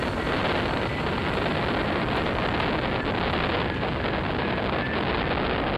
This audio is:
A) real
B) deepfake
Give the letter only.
A